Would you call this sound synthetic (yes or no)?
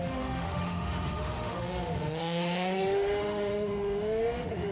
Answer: yes